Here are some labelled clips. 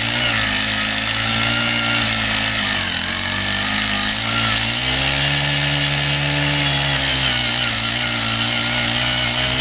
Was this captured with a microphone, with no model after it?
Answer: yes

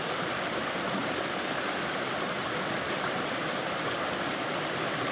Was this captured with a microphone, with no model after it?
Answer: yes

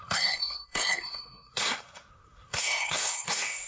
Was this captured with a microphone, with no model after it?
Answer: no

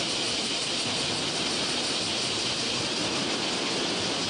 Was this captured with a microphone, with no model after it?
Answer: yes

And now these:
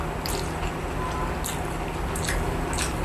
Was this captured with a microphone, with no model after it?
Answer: yes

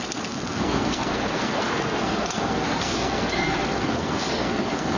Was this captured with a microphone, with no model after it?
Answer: no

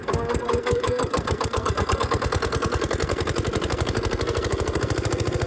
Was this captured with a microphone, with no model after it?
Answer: no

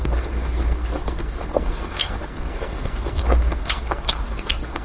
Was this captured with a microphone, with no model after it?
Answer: no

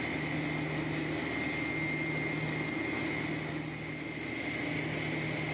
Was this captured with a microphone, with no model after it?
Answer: yes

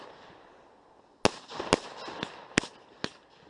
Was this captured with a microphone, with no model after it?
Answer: yes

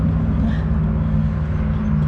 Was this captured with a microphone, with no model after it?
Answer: yes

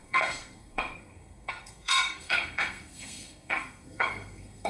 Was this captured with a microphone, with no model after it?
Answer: no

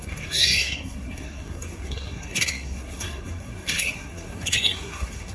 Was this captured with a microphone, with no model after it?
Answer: no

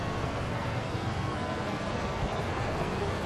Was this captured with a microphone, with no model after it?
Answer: no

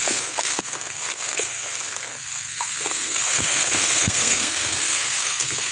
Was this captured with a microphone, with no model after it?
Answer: no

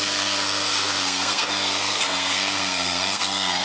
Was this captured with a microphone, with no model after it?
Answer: no